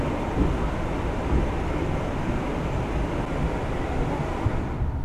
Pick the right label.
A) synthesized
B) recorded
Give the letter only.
B